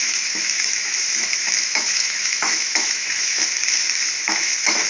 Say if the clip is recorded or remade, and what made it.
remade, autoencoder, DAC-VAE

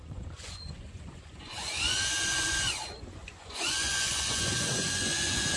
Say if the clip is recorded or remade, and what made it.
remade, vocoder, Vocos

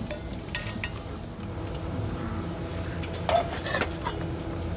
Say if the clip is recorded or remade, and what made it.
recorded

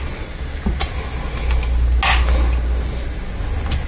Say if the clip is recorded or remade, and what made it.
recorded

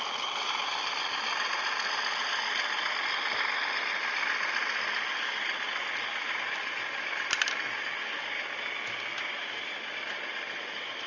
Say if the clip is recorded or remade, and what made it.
recorded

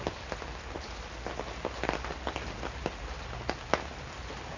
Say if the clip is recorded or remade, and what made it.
recorded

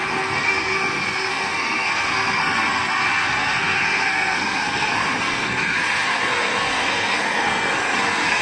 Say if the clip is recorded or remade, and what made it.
remade, codec, SNAC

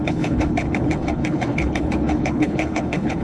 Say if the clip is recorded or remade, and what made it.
remade, codec, HILCodec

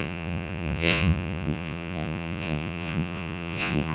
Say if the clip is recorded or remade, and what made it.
remade, vocoder, Vocos